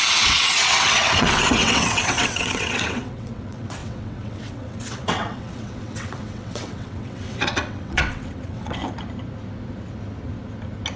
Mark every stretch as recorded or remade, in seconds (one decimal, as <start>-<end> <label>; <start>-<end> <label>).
0.0-8.8 remade; 8.8-11.0 recorded